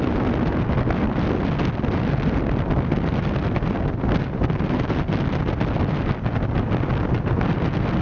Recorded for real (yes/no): yes